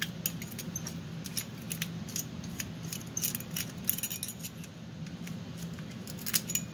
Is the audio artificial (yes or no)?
no